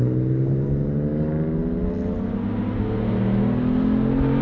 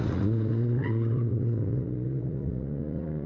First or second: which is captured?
first